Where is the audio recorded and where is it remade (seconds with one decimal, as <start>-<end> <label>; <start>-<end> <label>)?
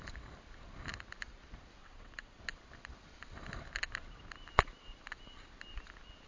0.0-1.8 recorded; 1.8-2.4 remade; 2.4-6.3 recorded